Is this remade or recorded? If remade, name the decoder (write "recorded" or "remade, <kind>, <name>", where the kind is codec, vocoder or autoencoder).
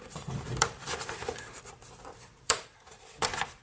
remade, vocoder, BigVGAN v2